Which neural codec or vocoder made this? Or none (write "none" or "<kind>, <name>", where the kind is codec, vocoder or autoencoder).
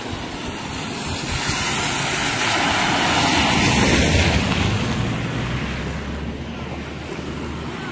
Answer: none